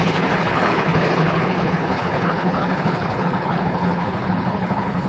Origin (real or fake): fake